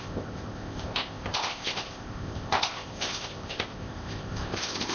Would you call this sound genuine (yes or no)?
no